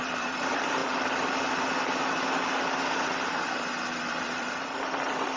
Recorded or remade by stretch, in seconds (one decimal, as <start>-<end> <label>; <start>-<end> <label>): 0.0-0.8 remade; 0.8-4.0 recorded; 4.0-5.4 remade